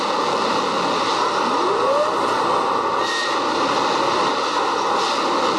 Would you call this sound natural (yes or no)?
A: yes